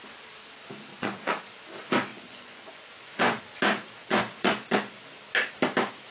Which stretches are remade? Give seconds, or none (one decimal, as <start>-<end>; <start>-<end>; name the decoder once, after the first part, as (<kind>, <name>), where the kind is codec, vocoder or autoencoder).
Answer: 0.9-1.6 (vocoder, Vocos); 2.1-3.4; 4.0-5.2